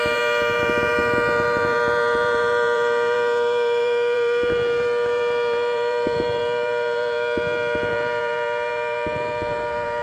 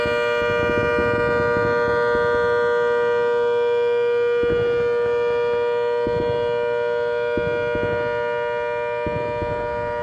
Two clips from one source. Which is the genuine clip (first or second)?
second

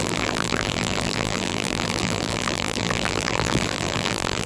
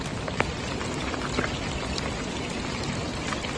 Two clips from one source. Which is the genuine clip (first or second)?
second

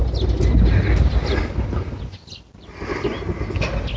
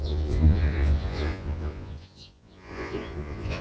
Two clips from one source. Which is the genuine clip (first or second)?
first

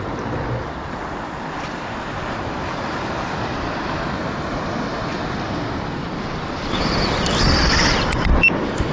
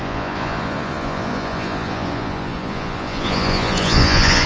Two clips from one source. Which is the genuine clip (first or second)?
first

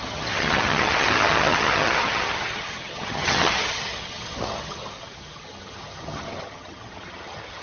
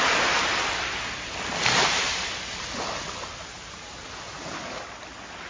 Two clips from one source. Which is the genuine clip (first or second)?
second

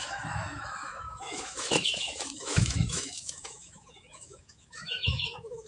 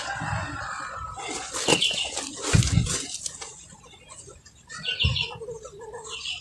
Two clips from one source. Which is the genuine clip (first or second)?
second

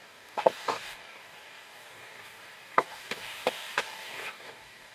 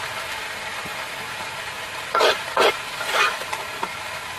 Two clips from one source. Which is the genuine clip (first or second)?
second